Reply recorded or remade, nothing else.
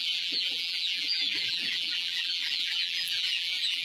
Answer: remade